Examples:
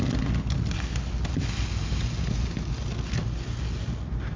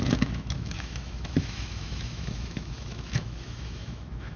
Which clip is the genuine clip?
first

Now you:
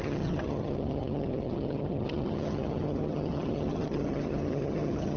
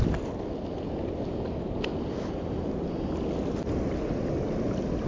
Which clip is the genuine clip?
second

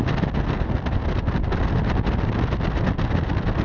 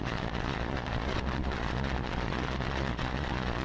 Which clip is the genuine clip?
first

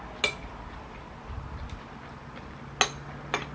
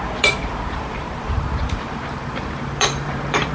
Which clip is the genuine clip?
first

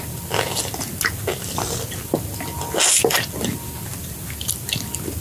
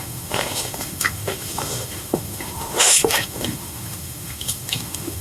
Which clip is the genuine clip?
first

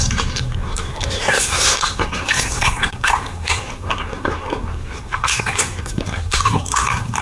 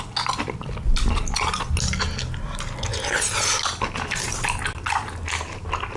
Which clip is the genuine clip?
second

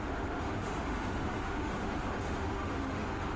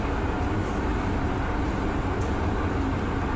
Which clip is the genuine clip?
second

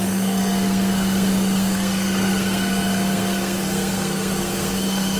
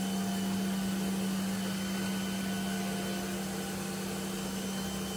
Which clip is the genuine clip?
second